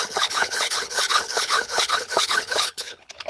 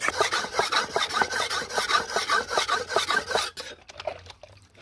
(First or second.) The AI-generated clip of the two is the first